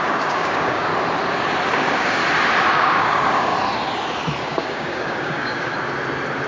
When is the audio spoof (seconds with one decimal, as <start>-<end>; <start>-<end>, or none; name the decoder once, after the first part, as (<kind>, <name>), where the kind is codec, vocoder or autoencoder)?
0.0-0.9 (codec, DAC); 1.7-2.2; 2.7-3.5; 4.4-5.7